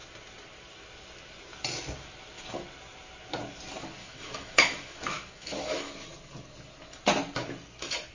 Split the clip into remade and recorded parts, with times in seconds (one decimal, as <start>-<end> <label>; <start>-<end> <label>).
0.0-4.0 recorded; 4.0-5.9 remade; 5.9-8.1 recorded